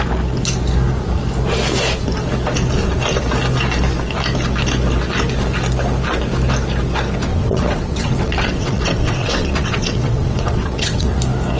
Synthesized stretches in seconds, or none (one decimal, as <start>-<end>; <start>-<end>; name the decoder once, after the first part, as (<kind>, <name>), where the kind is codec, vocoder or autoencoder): 7.3-11.2 (vocoder, WaveNeXt)